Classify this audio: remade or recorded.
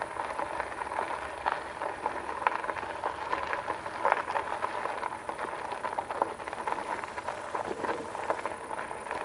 recorded